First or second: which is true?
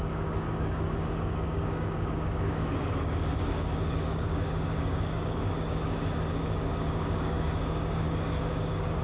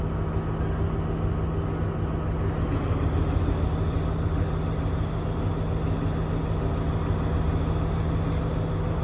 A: second